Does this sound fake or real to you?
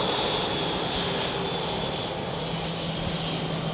real